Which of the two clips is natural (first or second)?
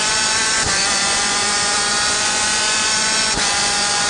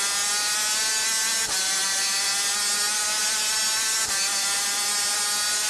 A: second